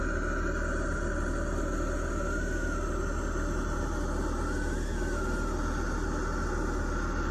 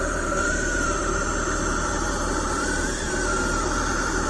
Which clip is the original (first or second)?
first